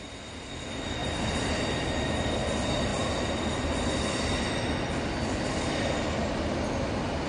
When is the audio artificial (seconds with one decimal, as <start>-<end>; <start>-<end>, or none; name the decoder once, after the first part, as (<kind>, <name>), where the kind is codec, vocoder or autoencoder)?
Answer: none

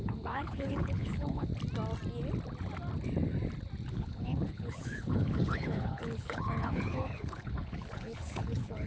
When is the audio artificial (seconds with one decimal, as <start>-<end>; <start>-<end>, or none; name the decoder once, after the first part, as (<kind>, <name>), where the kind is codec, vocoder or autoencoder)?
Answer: 0.0-1.5 (codec, HILCodec); 3.9-8.9

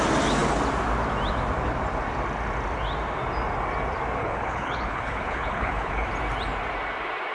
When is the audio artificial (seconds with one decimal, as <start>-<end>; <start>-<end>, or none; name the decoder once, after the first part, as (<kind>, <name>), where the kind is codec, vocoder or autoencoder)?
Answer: 4.2-6.1 (codec, HILCodec)